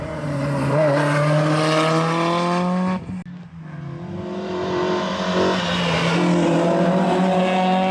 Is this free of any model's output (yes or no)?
yes